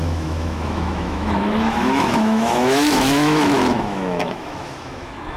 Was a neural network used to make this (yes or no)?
yes